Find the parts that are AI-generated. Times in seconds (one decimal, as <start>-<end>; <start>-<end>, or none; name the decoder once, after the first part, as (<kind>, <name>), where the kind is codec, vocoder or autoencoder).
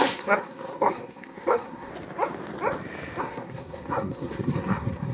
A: 0.0-1.9 (codec, SNAC); 3.2-5.1